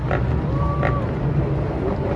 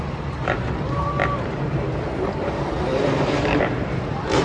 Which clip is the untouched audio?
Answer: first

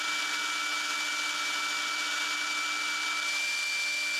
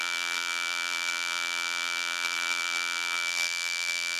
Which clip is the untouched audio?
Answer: first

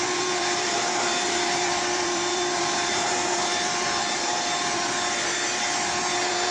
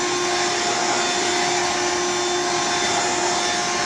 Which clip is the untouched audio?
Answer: second